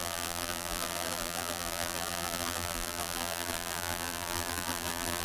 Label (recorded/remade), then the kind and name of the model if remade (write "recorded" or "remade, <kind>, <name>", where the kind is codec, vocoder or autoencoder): remade, vocoder, BigVGAN v2